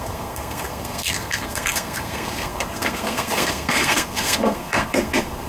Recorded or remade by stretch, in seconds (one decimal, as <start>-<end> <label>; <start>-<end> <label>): 0.0-5.5 remade